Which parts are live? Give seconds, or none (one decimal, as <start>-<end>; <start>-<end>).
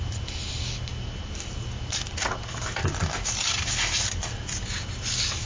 0.0-5.5